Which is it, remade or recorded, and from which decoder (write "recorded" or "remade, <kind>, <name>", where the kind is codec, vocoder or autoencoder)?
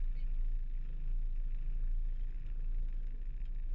recorded